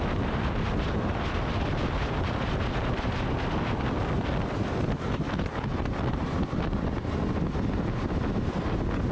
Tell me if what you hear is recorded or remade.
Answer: recorded